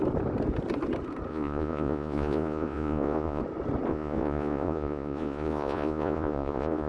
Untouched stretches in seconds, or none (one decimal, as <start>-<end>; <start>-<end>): 0.0-1.3; 3.4-3.9